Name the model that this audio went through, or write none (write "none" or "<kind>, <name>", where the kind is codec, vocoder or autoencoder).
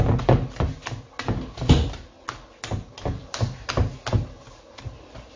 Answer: none